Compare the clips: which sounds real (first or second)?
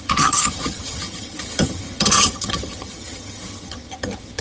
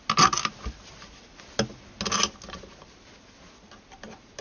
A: second